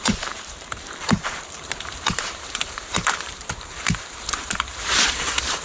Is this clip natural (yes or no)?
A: no